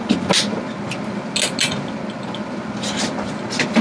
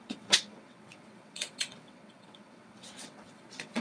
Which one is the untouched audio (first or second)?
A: first